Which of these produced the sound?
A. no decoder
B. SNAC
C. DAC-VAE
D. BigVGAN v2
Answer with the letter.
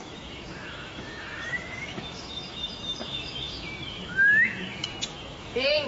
C